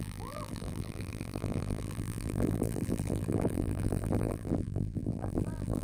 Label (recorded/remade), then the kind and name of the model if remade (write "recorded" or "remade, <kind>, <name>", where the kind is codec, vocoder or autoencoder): remade, vocoder, BigVGAN v2